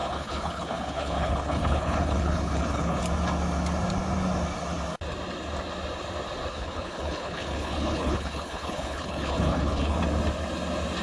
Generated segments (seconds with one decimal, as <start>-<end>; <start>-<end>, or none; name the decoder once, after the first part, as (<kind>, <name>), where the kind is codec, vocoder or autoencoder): 0.0-3.0 (codec, HILCodec); 6.5-10.0